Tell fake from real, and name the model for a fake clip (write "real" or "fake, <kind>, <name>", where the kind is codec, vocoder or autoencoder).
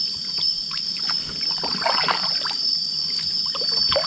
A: real